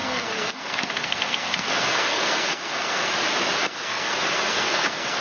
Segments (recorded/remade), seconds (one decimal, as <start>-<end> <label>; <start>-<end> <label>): 0.0-3.1 remade; 3.1-3.6 recorded; 3.6-5.2 remade

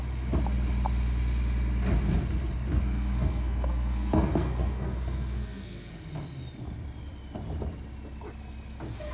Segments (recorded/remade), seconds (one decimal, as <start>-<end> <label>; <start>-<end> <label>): 0.0-2.7 recorded; 2.7-5.9 remade; 5.9-9.1 recorded

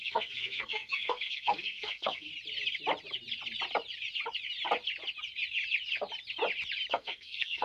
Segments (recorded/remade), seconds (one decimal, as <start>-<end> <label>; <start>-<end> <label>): 0.0-2.3 remade; 2.3-6.9 recorded; 6.9-7.6 remade

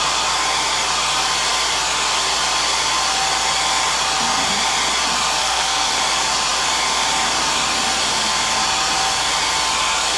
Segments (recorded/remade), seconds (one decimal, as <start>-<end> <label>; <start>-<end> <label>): 0.0-5.4 recorded; 5.4-5.9 remade; 5.9-10.2 recorded